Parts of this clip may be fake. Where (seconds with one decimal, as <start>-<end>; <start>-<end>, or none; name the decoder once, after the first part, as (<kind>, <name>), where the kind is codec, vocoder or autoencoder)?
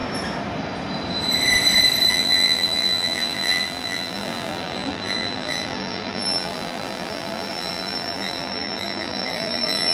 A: 2.1-9.9 (vocoder, BigVGAN v2)